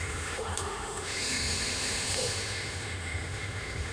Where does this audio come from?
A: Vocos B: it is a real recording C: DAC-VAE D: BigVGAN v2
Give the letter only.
C